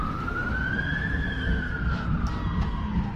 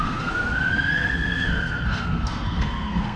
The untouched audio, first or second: first